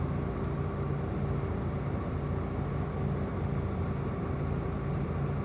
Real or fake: real